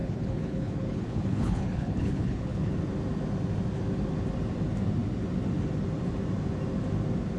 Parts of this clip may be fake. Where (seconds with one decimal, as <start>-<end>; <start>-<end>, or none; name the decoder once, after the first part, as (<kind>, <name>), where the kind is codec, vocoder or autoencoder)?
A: 0.0-2.7 (codec, HILCodec)